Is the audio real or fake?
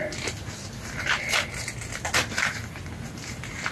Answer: real